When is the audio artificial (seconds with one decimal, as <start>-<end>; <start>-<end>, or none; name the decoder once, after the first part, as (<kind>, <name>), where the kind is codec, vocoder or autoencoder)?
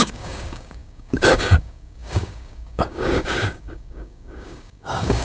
0.0-5.2 (codec, DAC)